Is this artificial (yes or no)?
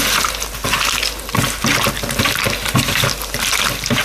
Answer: no